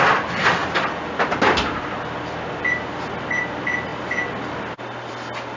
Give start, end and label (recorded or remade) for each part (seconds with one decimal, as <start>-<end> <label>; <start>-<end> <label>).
0.0-5.6 recorded